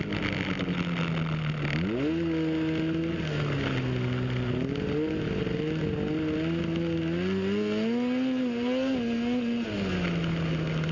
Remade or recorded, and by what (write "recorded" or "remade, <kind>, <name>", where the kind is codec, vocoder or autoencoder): recorded